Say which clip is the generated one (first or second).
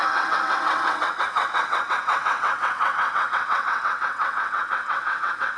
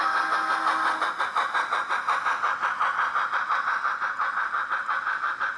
first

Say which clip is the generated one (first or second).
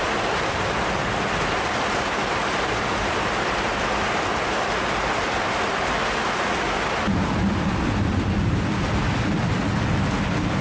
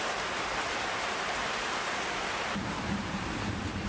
second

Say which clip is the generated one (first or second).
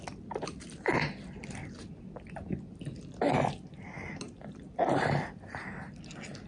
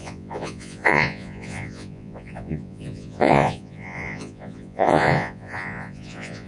second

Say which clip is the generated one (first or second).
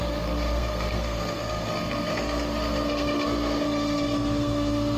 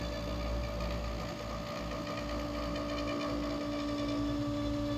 first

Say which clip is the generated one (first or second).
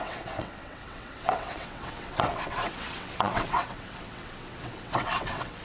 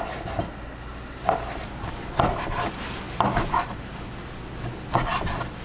first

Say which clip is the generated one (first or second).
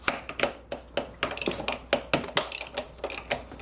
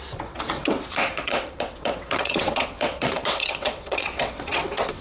second